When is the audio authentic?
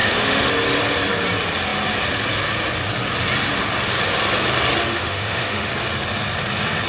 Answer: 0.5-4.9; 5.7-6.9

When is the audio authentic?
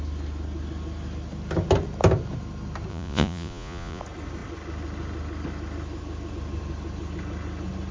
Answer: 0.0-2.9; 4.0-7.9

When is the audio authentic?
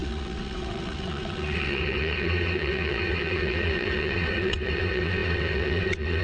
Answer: none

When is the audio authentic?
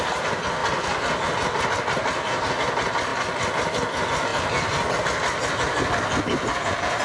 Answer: 0.0-7.0